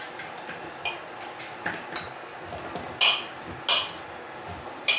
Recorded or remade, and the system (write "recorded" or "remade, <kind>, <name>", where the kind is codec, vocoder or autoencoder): recorded